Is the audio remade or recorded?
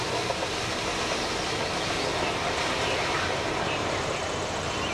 remade